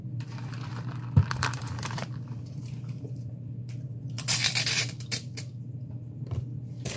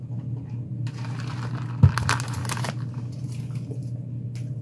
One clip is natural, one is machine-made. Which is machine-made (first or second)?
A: first